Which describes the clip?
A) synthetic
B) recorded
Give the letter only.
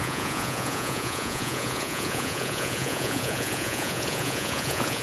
A